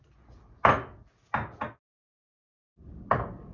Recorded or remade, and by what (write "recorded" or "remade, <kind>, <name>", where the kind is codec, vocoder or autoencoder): recorded